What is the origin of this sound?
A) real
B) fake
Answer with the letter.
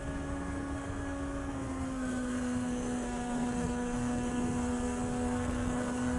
B